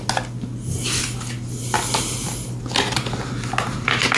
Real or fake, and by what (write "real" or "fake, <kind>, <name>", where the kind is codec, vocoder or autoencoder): real